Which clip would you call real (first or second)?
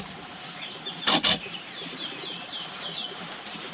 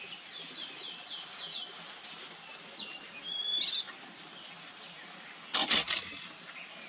second